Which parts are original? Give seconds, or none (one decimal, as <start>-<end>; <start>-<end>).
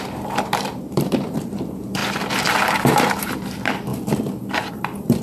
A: 2.0-2.6; 3.9-4.7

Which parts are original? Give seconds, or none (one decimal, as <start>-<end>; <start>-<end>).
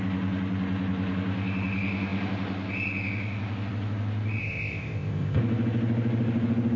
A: 0.0-4.4; 5.4-6.8